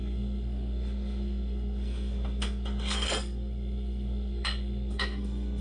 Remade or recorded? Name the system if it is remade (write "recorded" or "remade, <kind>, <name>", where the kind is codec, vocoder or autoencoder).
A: remade, codec, SNAC